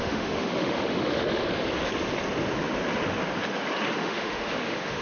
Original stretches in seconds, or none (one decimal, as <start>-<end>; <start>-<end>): 1.4-3.9